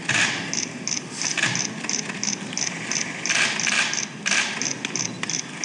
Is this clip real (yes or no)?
yes